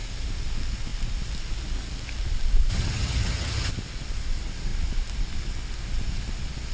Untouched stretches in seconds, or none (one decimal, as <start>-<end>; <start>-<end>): 0.0-2.7; 3.7-6.7